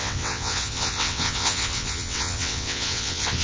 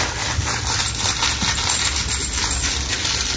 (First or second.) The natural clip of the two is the second